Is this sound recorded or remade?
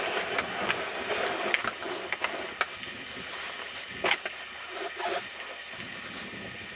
recorded